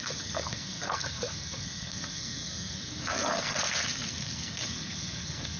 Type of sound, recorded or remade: remade